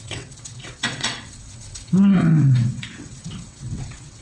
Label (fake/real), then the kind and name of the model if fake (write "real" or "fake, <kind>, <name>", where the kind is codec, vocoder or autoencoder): fake, vocoder, WaveNeXt